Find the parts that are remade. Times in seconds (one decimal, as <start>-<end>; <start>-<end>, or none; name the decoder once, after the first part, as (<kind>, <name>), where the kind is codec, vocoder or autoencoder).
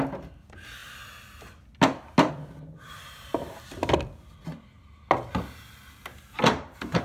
6.1-7.0 (vocoder, BigVGAN v2)